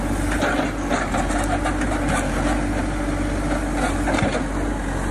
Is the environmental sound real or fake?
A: real